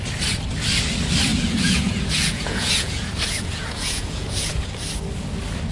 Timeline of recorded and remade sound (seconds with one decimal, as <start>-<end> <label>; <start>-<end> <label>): 0.0-1.3 recorded; 1.3-4.7 remade; 4.7-5.7 recorded